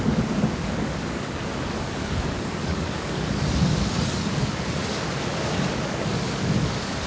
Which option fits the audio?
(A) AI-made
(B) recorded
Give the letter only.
A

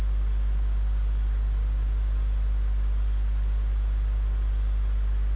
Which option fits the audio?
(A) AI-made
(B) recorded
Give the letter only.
B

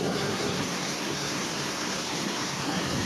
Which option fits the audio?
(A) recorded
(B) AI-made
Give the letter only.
B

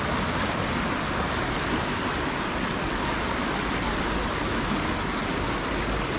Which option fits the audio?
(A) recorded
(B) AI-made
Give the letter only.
A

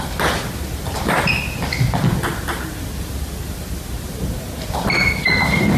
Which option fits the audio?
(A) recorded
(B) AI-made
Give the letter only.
A